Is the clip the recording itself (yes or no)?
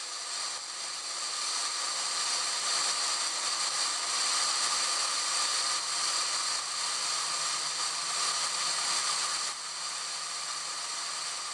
yes